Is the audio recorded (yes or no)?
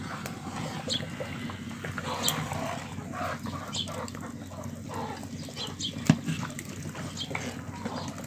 yes